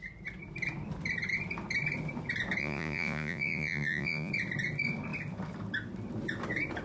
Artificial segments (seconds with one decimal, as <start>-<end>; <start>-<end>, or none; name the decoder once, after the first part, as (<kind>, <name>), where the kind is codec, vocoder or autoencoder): 2.6-4.3 (vocoder, Vocos)